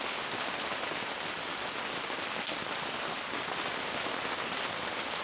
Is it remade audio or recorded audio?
recorded